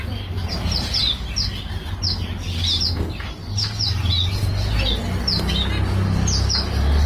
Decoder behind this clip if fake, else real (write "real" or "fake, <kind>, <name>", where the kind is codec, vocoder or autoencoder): real